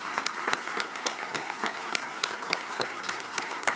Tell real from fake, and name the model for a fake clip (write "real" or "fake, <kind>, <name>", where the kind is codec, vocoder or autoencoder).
fake, codec, SNAC